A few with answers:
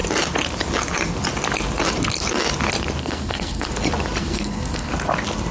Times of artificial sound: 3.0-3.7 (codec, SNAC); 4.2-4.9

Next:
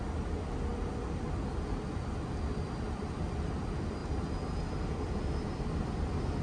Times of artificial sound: none

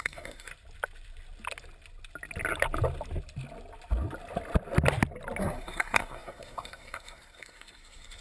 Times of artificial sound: 0.0-0.5 (codec, SNAC); 5.4-8.2

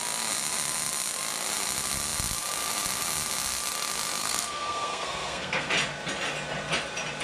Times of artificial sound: 4.2-5.7 (codec, SNAC)

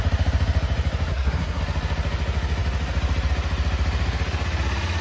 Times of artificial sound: 1.1-1.6 (codec, SNAC)

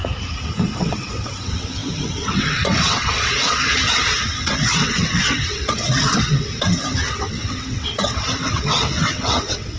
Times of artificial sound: 0.7-9.8 (vocoder, WaveNeXt)

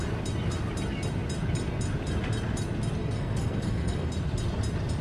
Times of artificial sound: 3.0-4.1 (codec, SNAC)